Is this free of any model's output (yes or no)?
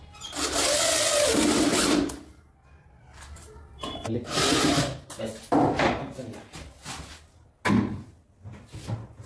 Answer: yes